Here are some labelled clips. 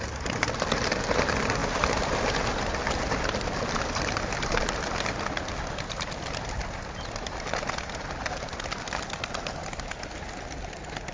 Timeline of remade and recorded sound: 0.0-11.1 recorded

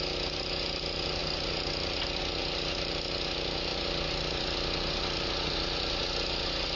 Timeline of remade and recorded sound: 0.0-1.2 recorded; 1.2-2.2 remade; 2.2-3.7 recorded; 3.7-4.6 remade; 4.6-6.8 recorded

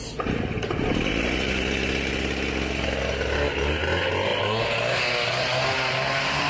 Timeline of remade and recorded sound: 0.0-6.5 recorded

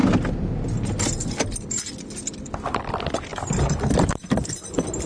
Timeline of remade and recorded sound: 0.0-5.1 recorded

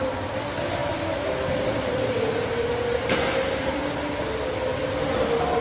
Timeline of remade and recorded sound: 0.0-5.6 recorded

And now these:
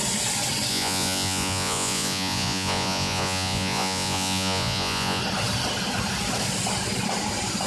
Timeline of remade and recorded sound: 0.0-0.7 recorded; 0.7-5.2 remade; 5.2-7.7 recorded

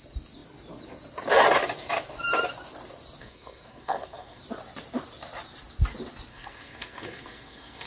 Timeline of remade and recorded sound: 0.0-3.2 recorded; 3.2-4.4 remade; 4.4-6.3 recorded; 6.3-7.9 remade

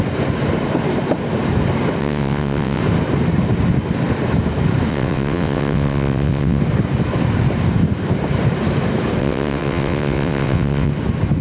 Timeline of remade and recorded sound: 0.0-2.0 recorded; 2.0-2.8 remade; 2.8-4.9 recorded; 4.9-6.6 remade; 6.6-9.2 recorded; 9.2-10.9 remade; 10.9-11.4 recorded